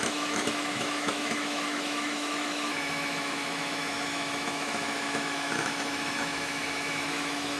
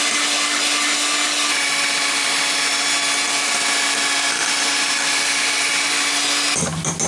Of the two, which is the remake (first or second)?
first